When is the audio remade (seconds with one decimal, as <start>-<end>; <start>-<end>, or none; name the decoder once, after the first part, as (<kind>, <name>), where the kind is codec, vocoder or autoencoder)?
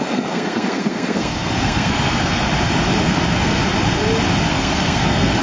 0.0-2.5 (codec, SNAC); 3.0-3.6; 4.5-5.4